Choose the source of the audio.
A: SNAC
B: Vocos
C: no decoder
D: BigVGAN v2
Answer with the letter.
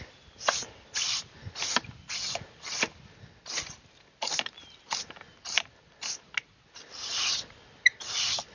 C